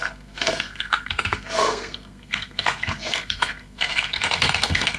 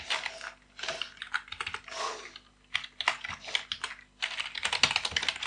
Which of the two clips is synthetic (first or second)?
first